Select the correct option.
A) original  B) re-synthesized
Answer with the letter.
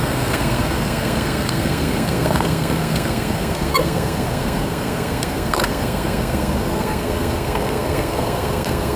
B